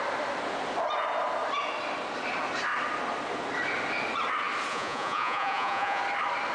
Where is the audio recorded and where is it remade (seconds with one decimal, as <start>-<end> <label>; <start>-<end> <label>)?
0.0-4.7 recorded; 4.7-6.0 remade; 6.0-6.5 recorded